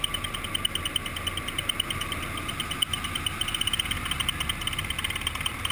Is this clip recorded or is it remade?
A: recorded